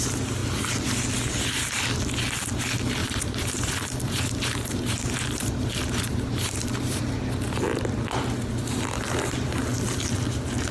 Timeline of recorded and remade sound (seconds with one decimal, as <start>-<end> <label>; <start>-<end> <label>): 0.0-3.0 recorded; 3.0-7.0 remade; 7.0-10.7 recorded